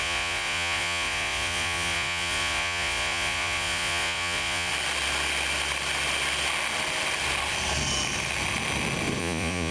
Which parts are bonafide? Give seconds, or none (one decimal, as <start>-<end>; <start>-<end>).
4.7-9.2